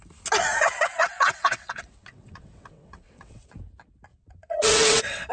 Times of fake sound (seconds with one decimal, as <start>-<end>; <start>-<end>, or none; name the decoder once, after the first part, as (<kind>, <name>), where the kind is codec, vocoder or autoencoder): 0.5-3.5 (vocoder, WaveNeXt); 4.1-5.3

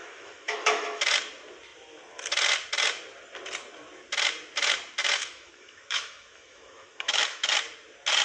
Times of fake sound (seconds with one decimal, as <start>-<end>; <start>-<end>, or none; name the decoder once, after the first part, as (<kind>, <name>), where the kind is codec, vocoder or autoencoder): 0.0-1.0 (autoencoder, DAC-VAE); 5.0-7.5

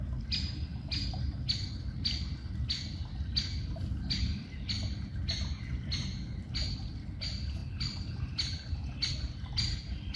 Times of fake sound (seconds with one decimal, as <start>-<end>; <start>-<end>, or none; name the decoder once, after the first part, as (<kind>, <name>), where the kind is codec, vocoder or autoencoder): none

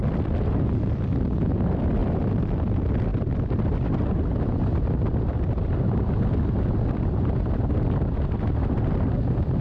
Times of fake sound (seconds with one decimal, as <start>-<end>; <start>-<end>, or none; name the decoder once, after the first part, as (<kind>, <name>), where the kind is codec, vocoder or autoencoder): 2.0-2.5 (vocoder, BigVGAN v2)